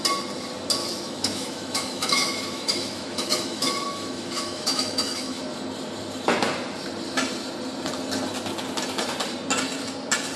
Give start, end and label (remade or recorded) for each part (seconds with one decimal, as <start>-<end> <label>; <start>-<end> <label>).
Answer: 0.0-0.8 recorded; 0.8-5.4 remade; 5.4-10.4 recorded